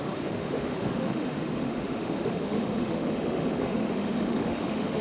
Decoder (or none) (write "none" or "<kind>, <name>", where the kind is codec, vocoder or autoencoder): autoencoder, DAC-VAE